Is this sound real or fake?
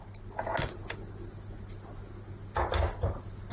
real